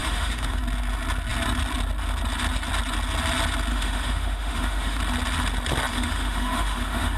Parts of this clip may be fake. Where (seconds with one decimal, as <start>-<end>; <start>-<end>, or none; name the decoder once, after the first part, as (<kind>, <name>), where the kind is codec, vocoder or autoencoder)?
0.0-0.6 (autoencoder, DAC-VAE); 3.7-5.0; 5.9-7.2